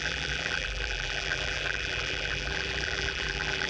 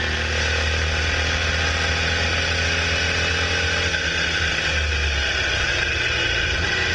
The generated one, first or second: first